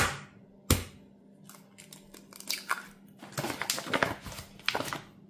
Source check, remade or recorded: recorded